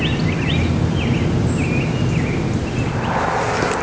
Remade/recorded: recorded